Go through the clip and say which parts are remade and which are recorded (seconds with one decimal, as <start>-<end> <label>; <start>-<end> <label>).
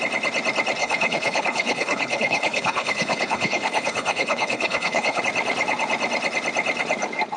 0.0-0.8 recorded; 0.8-5.2 remade; 5.2-7.4 recorded